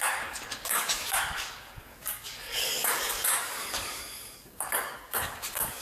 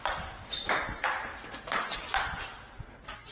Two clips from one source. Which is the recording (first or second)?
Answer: second